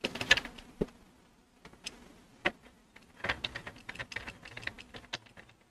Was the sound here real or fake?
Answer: real